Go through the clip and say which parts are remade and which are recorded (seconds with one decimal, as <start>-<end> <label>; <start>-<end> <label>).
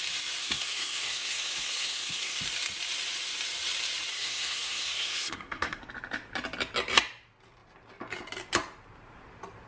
0.0-0.4 recorded; 0.4-2.4 remade; 2.4-4.1 recorded; 4.1-5.8 remade; 5.8-9.7 recorded